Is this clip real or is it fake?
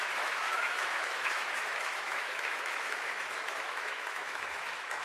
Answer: fake